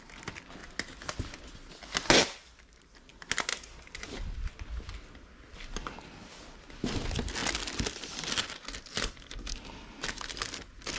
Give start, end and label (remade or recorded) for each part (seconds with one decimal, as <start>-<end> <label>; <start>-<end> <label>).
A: 0.0-11.0 recorded